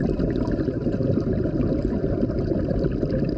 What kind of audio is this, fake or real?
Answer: real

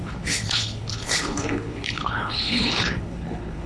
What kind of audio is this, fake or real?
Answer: fake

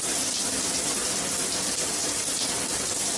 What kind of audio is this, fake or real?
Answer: real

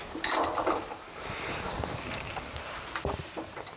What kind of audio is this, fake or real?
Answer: real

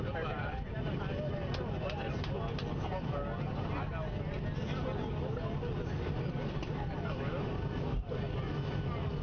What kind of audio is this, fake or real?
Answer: real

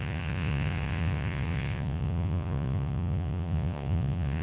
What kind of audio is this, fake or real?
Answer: fake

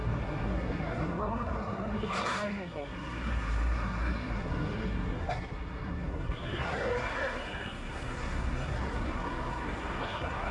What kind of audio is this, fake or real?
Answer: fake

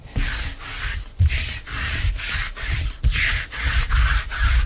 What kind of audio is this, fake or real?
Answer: real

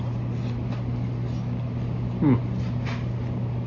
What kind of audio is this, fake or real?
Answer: real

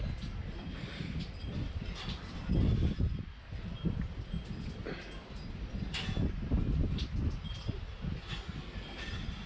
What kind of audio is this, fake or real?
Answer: real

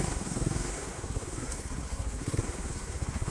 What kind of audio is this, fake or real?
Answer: fake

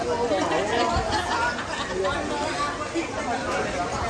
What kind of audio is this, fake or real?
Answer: real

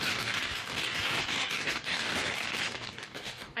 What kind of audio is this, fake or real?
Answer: fake